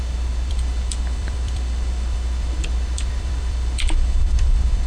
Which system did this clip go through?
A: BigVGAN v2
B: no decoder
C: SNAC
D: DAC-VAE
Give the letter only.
A